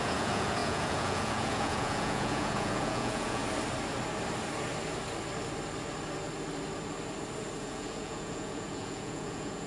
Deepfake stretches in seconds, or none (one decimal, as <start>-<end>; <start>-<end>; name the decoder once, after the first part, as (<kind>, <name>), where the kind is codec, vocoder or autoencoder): 0.0-3.4 (vocoder, Vocos); 7.6-9.7